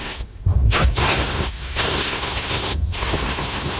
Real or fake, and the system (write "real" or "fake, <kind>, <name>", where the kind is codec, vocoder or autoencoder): fake, codec, SNAC